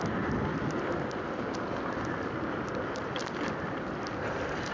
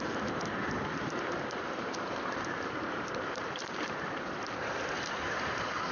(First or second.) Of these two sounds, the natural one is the first